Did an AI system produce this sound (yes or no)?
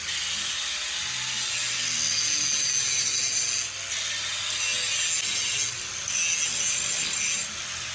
no